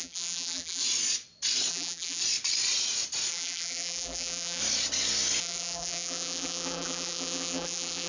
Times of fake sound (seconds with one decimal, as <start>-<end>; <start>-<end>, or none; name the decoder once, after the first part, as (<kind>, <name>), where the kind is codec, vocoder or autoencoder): 0.0-0.8 (vocoder, BigVGAN v2); 1.7-2.2; 3.3-4.6; 5.4-8.1